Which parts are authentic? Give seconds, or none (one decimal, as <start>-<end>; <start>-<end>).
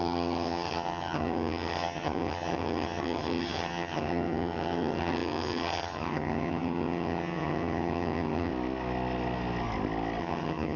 8.5-10.2